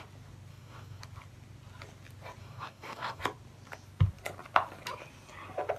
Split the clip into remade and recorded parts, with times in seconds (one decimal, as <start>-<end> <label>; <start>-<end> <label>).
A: 0.0-0.5 recorded; 0.5-1.0 remade; 1.0-2.4 recorded; 2.4-3.2 remade; 3.2-5.8 recorded